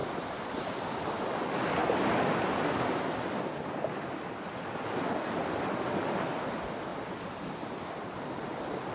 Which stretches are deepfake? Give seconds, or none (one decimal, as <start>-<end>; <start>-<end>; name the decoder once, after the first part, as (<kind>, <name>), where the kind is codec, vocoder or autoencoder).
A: 0.0-1.2 (vocoder, BigVGAN v2); 6.9-8.9

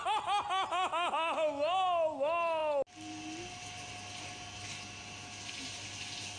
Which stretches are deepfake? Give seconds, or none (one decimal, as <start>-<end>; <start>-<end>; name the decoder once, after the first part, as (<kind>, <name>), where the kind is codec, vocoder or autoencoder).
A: none

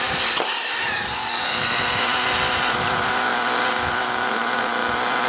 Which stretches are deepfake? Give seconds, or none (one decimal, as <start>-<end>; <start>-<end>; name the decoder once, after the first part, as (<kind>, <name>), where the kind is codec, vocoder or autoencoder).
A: 0.0-1.2 (vocoder, BigVGAN v2); 1.9-3.3

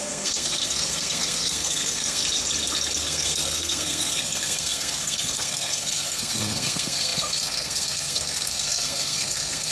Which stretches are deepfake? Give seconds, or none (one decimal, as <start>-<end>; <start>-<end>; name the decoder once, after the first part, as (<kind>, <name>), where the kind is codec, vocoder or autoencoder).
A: 0.0-2.2 (codec, SNAC); 3.0-9.7

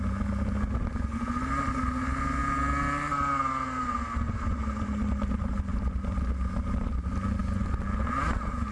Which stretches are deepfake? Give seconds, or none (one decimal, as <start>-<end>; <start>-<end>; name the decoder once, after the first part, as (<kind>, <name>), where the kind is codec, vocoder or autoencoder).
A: none

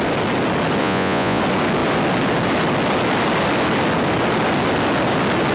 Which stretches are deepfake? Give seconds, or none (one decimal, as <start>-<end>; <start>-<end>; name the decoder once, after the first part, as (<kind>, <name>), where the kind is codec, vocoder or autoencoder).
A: 0.8-1.4 (vocoder, Vocos)

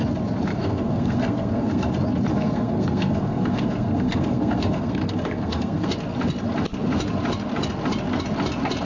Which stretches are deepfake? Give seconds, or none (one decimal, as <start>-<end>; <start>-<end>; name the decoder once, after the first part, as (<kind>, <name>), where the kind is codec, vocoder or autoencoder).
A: 0.5-1.9 (codec, SNAC); 2.3-5.9